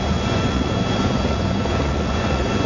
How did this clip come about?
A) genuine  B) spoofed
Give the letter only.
B